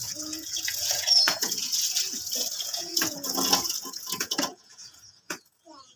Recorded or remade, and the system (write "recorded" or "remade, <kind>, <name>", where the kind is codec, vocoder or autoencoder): remade, vocoder, Vocos